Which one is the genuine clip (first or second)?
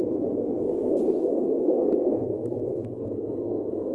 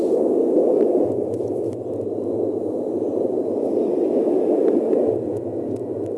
second